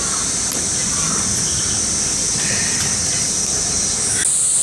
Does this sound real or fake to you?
real